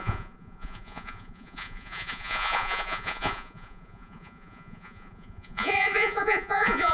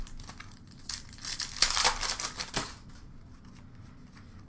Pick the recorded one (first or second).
second